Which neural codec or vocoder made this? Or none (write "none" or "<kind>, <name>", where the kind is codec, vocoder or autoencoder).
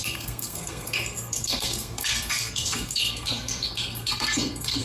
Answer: codec, SNAC